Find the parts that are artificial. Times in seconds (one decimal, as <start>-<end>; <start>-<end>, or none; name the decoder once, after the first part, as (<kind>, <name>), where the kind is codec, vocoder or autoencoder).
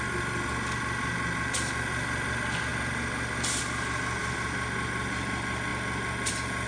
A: none